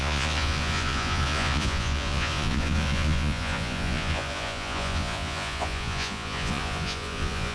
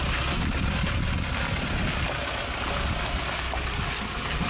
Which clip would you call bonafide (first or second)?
second